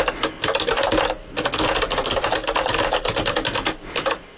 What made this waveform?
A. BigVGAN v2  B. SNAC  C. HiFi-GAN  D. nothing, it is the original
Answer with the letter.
D